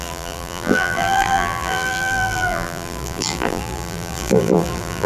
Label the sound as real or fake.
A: fake